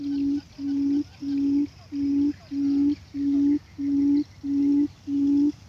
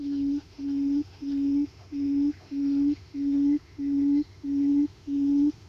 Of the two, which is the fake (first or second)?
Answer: second